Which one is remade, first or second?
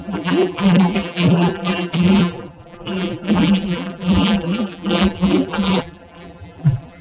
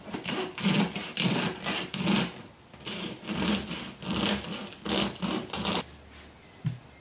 first